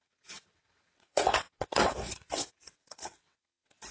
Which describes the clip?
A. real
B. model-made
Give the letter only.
B